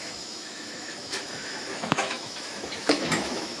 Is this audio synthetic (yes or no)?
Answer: yes